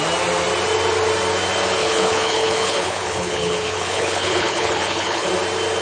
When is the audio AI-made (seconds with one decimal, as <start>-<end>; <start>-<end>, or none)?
1.8-5.3